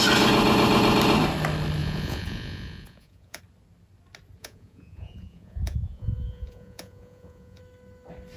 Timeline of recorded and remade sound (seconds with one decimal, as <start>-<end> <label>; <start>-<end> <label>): 0.0-1.8 recorded; 1.8-3.4 remade; 3.4-4.4 recorded; 4.4-7.6 remade; 7.6-8.4 recorded